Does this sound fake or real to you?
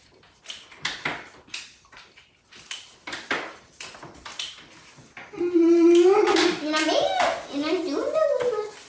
real